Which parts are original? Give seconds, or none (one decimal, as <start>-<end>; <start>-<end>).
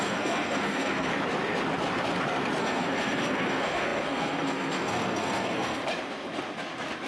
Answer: 1.1-2.6; 5.8-7.1